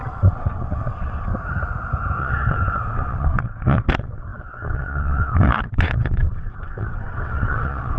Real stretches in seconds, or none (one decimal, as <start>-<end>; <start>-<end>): 1.3-2.2